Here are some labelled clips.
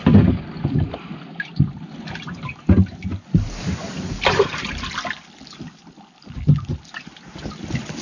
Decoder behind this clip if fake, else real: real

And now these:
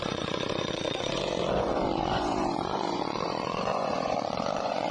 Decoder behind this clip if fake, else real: fake, vocoder, Vocos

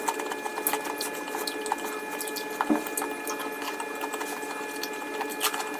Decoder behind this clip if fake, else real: real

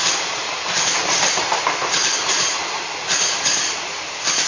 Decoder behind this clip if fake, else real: real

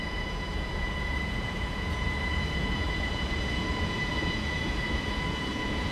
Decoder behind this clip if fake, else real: fake, vocoder, Vocos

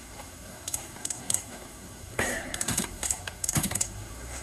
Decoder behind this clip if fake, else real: fake, codec, SNAC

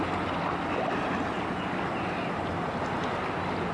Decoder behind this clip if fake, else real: real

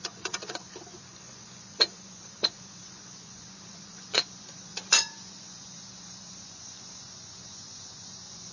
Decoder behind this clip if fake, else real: fake, vocoder, Vocos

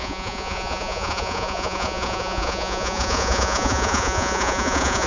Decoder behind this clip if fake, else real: fake, vocoder, Vocos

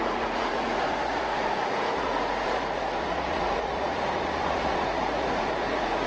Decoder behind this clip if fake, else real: fake, vocoder, Vocos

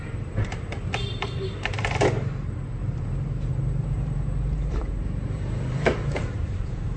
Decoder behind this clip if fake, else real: fake, vocoder, BigVGAN v2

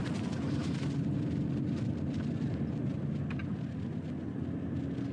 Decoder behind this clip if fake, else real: real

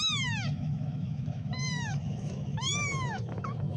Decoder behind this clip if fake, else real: fake, autoencoder, DAC-VAE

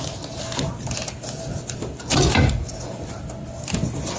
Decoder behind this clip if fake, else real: real